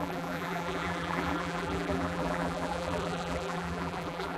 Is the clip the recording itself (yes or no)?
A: no